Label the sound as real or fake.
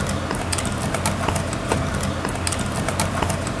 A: real